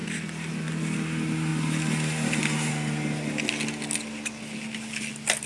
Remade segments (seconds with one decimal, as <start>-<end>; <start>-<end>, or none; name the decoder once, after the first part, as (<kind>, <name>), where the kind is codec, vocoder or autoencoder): none